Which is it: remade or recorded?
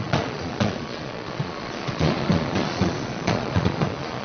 remade